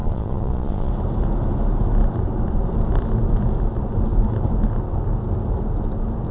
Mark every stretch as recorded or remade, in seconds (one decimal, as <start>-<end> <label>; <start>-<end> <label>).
0.0-0.9 remade; 0.9-6.3 recorded